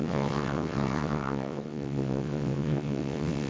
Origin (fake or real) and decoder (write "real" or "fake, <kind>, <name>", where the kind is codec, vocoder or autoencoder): fake, vocoder, WaveNeXt